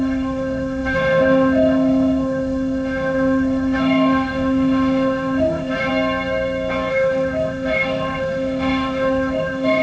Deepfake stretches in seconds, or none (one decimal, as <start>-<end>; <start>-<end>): 0.0-5.9; 6.9-9.8